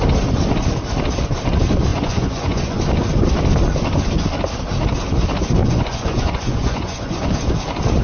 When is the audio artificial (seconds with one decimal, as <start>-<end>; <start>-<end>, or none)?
1.9-2.8; 5.6-7.3